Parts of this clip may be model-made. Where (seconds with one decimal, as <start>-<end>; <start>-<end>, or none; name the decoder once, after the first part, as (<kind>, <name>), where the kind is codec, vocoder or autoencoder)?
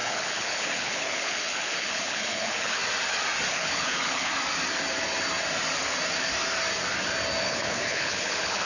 0.0-2.8 (codec, HILCodec); 3.5-4.3; 7.4-8.7